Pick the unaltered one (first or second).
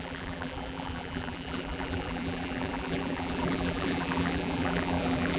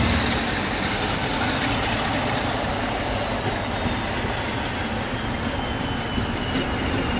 second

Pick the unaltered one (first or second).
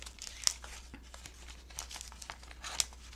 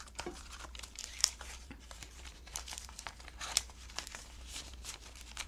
first